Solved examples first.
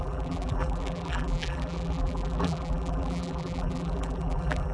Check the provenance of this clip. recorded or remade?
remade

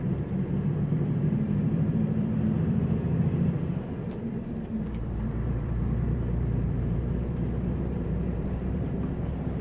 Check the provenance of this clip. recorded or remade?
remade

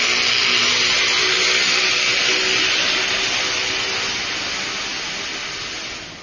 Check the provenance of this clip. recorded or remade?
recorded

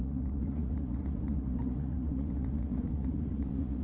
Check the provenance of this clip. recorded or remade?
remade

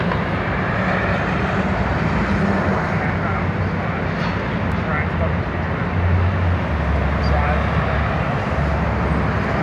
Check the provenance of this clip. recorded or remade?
recorded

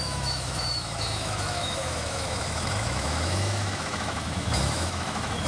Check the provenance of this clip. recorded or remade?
remade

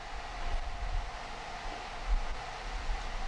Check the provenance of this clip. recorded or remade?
recorded